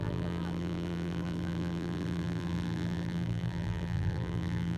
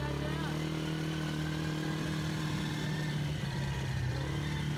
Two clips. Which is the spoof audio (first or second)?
first